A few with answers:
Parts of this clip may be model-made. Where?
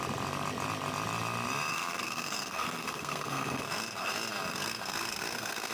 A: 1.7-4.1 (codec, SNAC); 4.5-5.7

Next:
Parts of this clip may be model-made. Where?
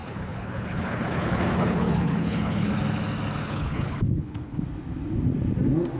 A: 0.0-2.7 (codec, HILCodec); 3.4-4.6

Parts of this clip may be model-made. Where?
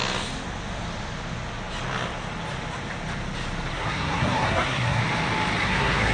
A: 3.7-5.0 (codec, SNAC); 5.6-6.1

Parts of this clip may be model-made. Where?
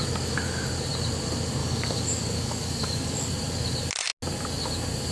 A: 1.6-3.3 (codec, DAC)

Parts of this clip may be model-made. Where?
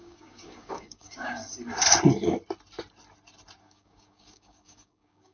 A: 0.0-1.4 (codec, DAC); 3.6-5.3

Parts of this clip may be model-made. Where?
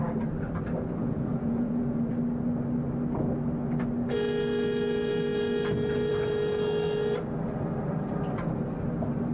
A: 1.0-2.1 (vocoder, Vocos)